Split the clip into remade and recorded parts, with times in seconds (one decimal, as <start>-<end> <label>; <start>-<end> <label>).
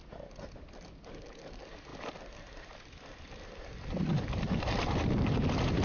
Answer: 0.0-5.8 recorded